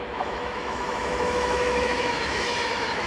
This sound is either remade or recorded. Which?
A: remade